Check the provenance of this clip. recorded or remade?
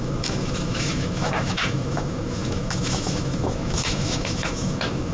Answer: remade